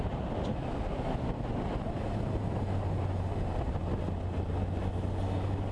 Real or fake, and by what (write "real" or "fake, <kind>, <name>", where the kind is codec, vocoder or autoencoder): real